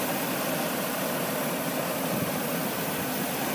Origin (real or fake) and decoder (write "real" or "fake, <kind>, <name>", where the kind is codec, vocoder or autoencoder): real